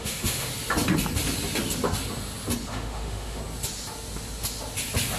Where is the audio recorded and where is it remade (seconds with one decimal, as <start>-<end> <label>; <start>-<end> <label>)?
0.0-0.5 remade; 0.5-2.7 recorded; 2.7-3.4 remade; 3.4-5.2 recorded